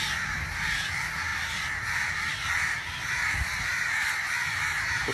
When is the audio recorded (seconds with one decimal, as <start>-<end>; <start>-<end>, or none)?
0.0-5.1